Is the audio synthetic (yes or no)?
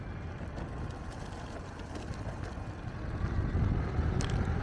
no